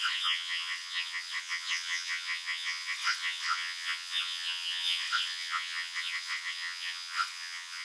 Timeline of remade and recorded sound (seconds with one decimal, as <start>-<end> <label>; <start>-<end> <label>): 0.0-7.8 remade